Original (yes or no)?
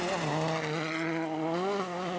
yes